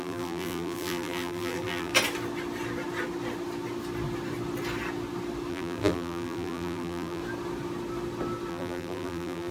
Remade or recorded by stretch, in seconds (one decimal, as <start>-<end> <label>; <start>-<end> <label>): 0.0-1.9 remade; 1.9-5.5 recorded; 5.5-7.2 remade; 7.2-8.5 recorded; 8.5-9.5 remade